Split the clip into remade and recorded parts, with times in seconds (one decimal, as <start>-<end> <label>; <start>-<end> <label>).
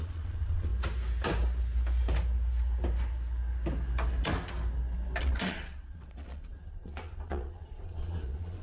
0.0-0.7 remade; 0.7-5.2 recorded; 5.2-8.6 remade